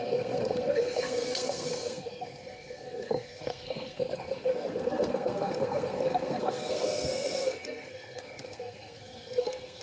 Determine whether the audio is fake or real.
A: fake